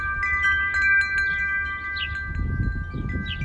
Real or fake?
real